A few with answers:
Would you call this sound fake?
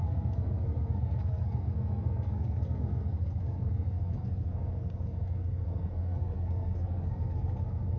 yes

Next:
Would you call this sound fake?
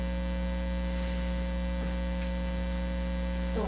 no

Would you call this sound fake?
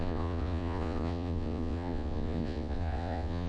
yes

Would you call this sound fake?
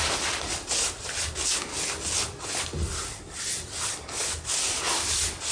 no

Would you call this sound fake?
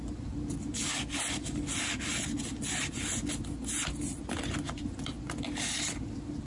no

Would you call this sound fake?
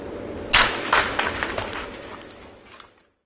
no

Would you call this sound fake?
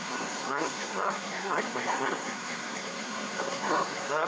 yes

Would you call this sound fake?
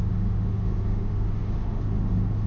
yes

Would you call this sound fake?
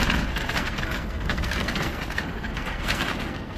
yes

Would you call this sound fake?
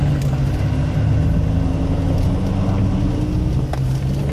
no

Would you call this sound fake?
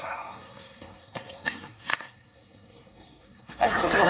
yes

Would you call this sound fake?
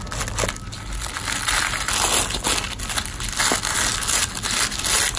no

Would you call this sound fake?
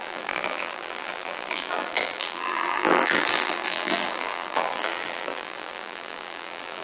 yes